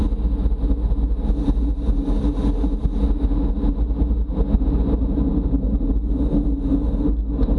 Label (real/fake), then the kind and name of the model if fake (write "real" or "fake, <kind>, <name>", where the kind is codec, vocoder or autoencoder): real